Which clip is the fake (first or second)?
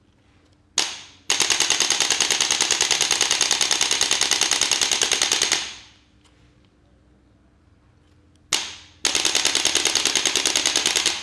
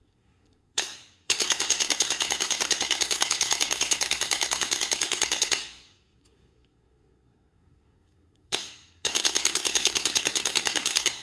second